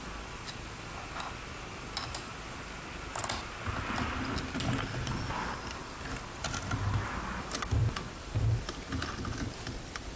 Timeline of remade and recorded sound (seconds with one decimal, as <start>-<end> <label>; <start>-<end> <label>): 0.0-10.2 recorded